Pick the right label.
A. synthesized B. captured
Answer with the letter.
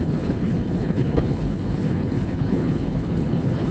A